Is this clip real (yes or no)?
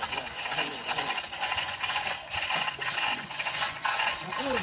no